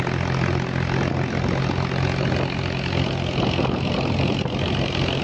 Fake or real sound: real